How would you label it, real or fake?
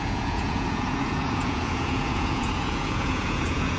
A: fake